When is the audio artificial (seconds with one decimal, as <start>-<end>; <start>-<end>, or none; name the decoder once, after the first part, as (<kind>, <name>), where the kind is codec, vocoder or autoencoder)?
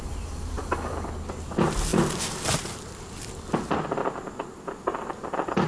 none